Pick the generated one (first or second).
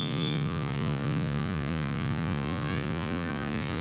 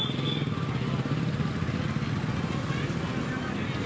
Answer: first